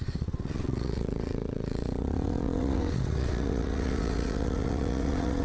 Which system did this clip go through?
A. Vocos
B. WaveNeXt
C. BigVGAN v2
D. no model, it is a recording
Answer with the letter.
B